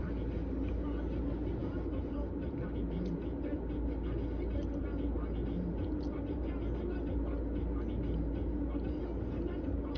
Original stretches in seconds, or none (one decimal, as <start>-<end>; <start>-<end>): 0.0-10.0

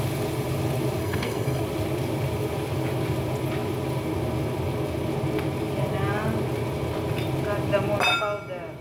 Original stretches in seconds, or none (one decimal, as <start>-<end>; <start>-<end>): 0.0-1.0; 1.6-8.8